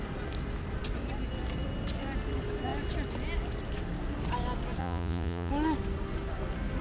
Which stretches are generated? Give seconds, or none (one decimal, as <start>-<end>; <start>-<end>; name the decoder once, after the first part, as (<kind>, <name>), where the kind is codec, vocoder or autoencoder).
4.8-5.5 (vocoder, Vocos)